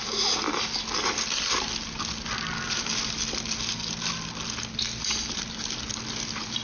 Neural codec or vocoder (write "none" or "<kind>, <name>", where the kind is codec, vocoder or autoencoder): none